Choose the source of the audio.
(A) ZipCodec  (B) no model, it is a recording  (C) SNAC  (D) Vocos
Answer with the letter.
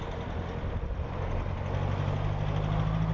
B